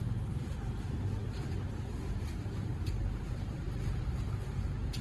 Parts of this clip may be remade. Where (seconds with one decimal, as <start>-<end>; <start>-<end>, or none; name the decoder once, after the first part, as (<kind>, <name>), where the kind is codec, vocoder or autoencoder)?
1.2-4.2 (vocoder, BigVGAN v2)